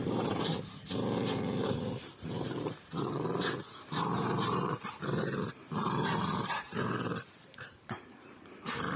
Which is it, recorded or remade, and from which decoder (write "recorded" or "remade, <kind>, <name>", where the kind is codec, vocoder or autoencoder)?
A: remade, vocoder, BigVGAN v2